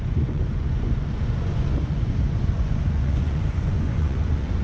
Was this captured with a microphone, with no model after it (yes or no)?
no